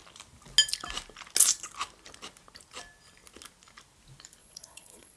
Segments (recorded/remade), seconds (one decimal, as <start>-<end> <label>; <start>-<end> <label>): 0.0-4.4 recorded; 4.4-5.2 remade